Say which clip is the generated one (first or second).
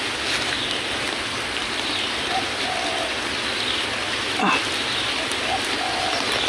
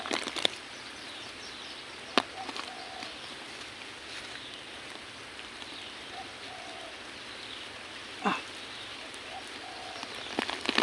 second